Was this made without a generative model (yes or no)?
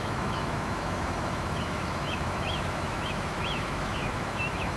no